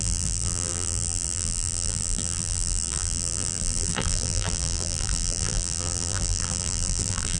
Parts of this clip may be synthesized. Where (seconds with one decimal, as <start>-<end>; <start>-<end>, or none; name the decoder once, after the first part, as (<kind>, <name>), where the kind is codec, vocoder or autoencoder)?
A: 0.0-7.4 (vocoder, BigVGAN v2)